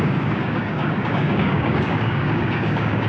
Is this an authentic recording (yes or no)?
no